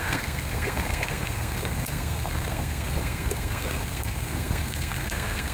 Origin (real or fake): fake